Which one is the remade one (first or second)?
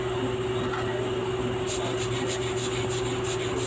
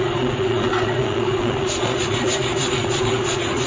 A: second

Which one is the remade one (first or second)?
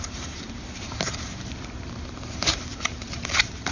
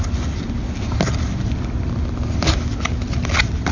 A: first